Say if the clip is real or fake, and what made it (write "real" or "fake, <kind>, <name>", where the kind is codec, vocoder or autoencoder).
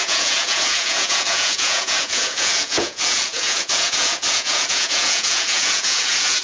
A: fake, vocoder, Vocos